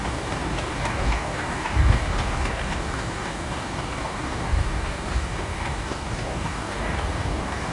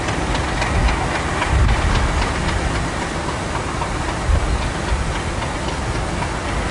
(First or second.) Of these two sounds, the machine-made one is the first